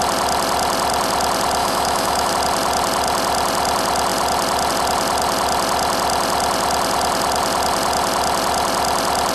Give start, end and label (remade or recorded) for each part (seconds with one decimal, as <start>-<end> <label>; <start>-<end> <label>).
0.0-1.6 recorded; 1.6-2.3 remade; 2.3-9.3 recorded